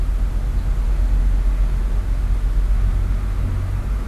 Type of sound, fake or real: real